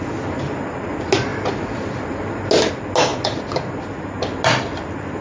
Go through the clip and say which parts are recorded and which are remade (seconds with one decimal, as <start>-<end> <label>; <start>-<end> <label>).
0.0-5.2 recorded

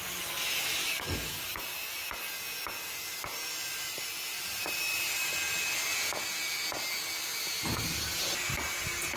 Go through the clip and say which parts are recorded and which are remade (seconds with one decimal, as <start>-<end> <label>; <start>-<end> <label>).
0.0-0.8 recorded; 0.8-1.6 remade; 1.6-9.2 recorded

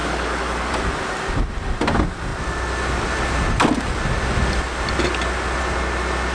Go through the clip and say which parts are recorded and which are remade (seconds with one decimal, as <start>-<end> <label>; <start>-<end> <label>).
0.0-0.7 remade; 0.7-6.3 recorded